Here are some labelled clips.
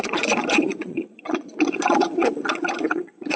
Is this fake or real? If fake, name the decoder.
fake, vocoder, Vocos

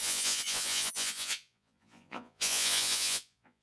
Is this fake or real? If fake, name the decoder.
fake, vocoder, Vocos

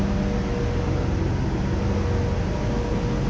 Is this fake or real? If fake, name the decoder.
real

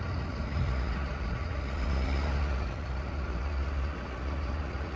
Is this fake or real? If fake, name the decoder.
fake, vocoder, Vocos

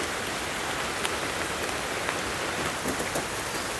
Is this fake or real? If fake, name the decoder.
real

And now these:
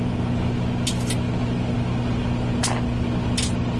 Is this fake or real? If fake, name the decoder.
real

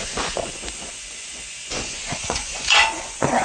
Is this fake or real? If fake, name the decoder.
fake, vocoder, Vocos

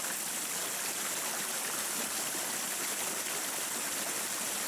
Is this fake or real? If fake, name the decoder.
real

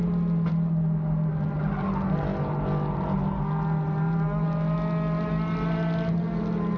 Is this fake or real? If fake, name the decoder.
real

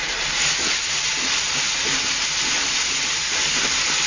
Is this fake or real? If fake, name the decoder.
real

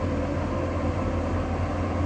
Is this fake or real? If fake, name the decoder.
real